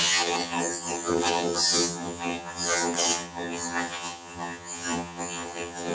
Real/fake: fake